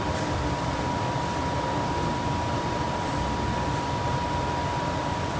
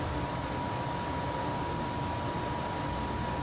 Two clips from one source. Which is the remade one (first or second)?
first